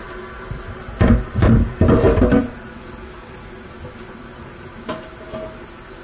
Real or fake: real